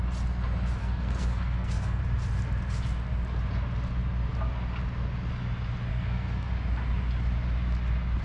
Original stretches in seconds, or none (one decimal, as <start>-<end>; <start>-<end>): 0.0-0.8; 2.0-5.9; 6.5-8.2